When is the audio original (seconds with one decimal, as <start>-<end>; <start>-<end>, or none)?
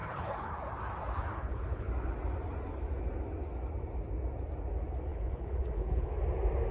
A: 0.5-1.3; 1.9-5.1; 6.1-6.7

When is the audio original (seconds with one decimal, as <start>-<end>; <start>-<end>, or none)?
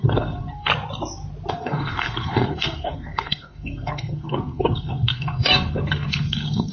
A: 0.7-1.5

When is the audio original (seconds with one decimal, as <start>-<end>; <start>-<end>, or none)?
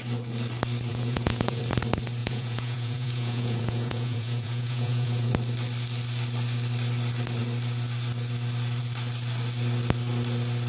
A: 0.0-0.9; 1.6-2.2; 5.3-10.7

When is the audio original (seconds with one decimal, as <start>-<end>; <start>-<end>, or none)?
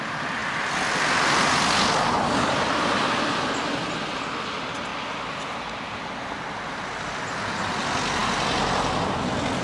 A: 0.0-9.6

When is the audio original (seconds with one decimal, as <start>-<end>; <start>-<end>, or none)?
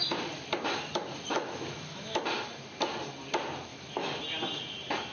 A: 0.0-1.3; 2.2-3.7; 4.2-5.1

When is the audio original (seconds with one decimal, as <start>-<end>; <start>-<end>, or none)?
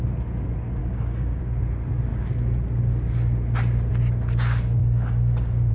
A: 0.0-0.8; 1.4-4.8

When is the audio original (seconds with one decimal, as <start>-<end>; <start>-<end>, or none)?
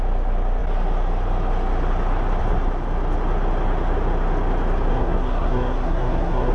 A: 0.0-4.9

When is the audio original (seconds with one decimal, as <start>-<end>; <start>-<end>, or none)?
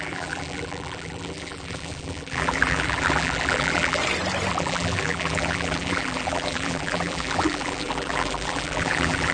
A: 4.0-4.5